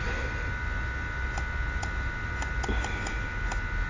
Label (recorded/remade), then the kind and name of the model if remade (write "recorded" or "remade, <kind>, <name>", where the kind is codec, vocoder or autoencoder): recorded